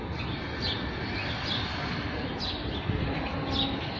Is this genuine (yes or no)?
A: yes